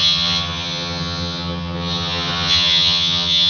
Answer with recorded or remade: remade